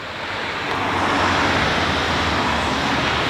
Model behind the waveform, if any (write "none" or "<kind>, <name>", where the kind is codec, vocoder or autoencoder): none